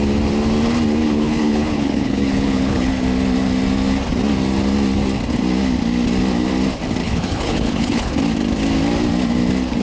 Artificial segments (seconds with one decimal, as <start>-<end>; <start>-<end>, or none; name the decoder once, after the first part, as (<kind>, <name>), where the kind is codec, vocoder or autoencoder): 1.0-2.9 (codec, HILCodec); 7.0-8.1